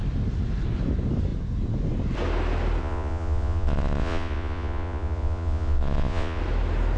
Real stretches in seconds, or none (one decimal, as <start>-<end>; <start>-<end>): 0.0-2.8; 6.4-7.0